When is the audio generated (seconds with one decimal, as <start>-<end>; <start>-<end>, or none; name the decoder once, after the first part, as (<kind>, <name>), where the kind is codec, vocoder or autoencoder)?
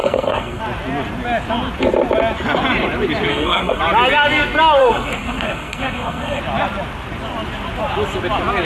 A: 0.0-0.6 (codec, SNAC); 3.3-3.8; 4.8-6.4